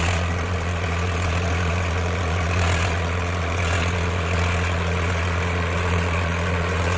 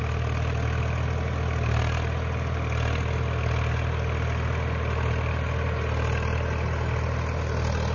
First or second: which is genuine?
second